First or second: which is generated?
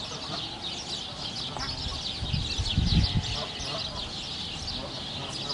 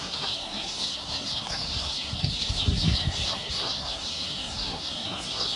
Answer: second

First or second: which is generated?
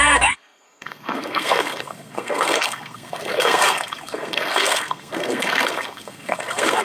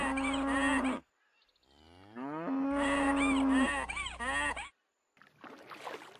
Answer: first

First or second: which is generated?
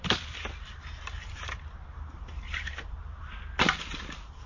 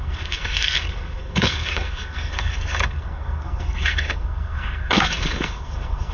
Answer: second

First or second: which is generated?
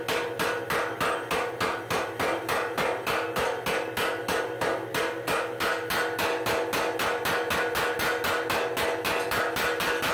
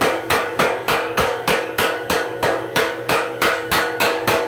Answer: second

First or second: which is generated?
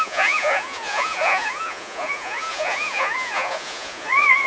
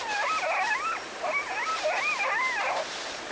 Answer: first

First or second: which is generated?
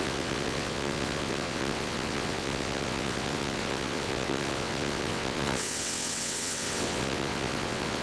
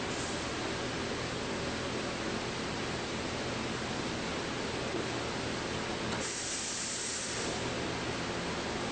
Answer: first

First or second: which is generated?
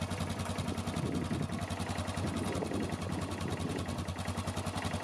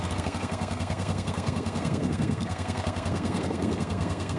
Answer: second